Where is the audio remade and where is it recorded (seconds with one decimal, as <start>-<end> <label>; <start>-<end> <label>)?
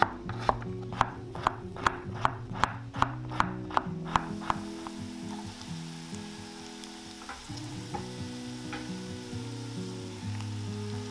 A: 0.0-1.1 recorded; 1.1-2.7 remade; 2.7-7.4 recorded; 7.4-8.0 remade; 8.0-11.1 recorded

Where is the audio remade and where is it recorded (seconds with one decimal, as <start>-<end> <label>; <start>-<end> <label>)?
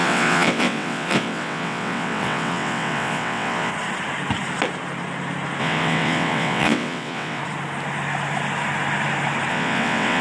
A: 0.0-3.7 remade; 3.7-5.6 recorded; 5.6-7.4 remade; 7.4-9.5 recorded; 9.5-10.2 remade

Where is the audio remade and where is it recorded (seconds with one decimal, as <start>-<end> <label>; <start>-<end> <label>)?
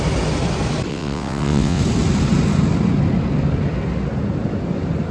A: 0.0-0.9 recorded; 0.9-1.8 remade; 1.8-5.1 recorded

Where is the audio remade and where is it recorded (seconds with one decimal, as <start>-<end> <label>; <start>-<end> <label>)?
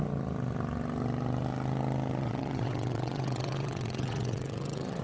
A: 0.0-2.2 recorded; 2.2-5.0 remade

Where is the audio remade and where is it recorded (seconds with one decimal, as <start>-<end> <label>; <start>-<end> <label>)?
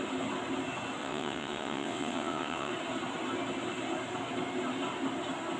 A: 0.0-1.0 recorded; 1.0-2.7 remade; 2.7-5.6 recorded